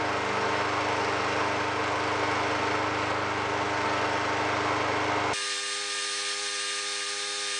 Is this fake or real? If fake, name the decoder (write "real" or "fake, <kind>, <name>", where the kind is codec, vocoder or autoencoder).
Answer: real